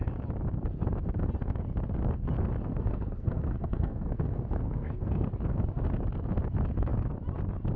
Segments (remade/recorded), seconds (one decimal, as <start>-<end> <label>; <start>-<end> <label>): 0.0-2.7 recorded; 2.7-5.3 remade; 5.3-7.8 recorded